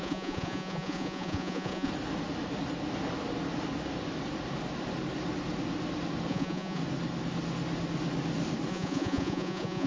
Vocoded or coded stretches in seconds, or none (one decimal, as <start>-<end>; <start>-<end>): 0.0-1.9; 6.3-6.8; 8.7-9.9

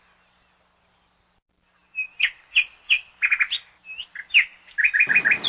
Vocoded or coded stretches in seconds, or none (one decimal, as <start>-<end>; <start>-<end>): none